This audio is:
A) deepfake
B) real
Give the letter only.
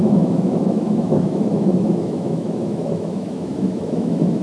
A